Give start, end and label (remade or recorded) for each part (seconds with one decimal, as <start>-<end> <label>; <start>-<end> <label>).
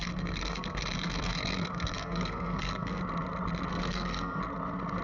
0.0-3.0 remade; 3.0-3.7 recorded; 3.7-4.4 remade; 4.4-5.0 recorded